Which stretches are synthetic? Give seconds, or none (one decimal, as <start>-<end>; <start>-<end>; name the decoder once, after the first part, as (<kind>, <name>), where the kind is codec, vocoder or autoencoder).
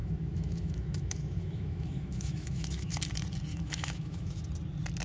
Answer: 0.0-3.0 (autoencoder, DAC-VAE); 3.5-4.4